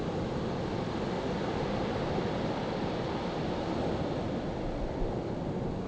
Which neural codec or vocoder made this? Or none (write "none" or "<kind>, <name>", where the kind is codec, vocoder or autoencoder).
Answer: none